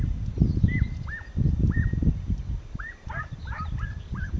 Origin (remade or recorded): recorded